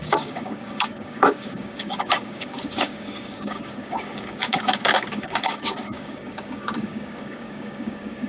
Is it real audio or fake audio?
fake